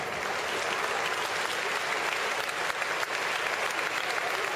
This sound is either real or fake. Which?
real